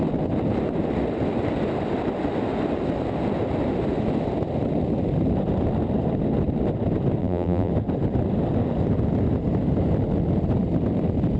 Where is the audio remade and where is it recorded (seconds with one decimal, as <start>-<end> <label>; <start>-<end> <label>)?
0.0-7.2 recorded; 7.2-7.7 remade; 7.7-11.4 recorded